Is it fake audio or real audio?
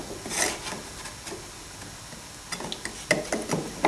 real